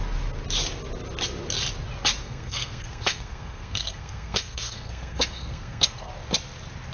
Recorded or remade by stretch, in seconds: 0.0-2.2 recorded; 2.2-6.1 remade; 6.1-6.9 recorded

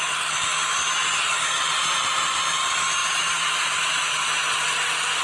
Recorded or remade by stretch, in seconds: 0.0-3.0 recorded; 3.0-4.0 remade; 4.0-5.2 recorded

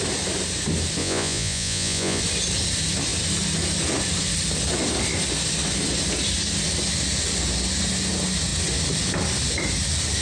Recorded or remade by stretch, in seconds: 0.0-1.0 recorded; 1.0-2.2 remade; 2.2-10.2 recorded

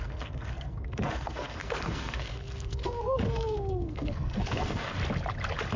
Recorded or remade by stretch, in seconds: 0.0-5.0 remade; 5.0-5.8 recorded

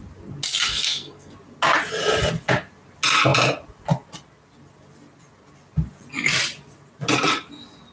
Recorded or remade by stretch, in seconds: 0.0-0.7 recorded; 0.7-1.3 remade; 1.3-7.9 recorded

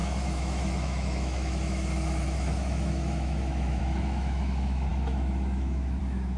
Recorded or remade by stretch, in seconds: 0.0-6.4 remade